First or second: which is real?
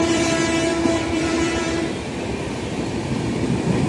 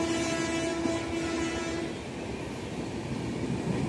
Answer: second